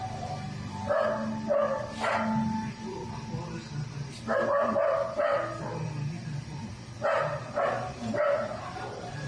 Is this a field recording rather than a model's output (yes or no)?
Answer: yes